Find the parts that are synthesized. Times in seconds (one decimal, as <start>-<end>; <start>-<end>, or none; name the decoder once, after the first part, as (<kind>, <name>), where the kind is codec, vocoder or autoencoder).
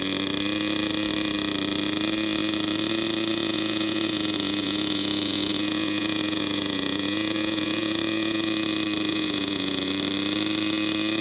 3.3-8.5 (vocoder, Vocos); 9.1-9.9